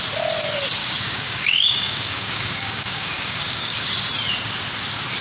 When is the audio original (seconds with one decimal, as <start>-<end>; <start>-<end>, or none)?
0.0-0.8; 3.9-5.2